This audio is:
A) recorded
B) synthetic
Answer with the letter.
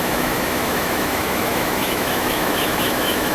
B